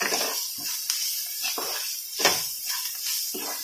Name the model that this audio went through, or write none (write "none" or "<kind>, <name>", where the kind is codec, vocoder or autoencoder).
none